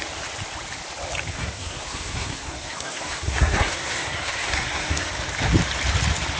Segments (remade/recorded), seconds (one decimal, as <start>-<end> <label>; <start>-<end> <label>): 0.0-1.3 recorded; 1.3-5.1 remade; 5.1-6.4 recorded